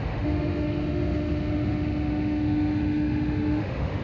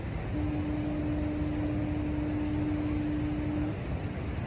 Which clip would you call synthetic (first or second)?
first